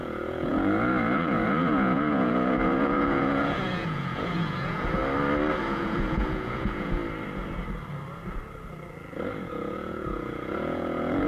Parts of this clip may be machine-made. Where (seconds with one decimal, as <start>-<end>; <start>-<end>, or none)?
0.0-5.0; 5.6-7.0; 9.4-11.3